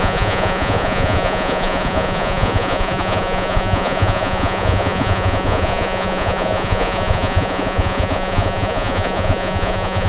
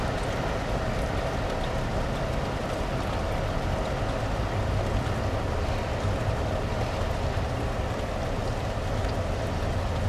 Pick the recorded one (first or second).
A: second